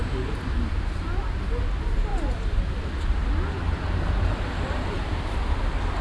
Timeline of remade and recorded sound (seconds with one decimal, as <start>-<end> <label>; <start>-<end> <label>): 0.0-6.0 recorded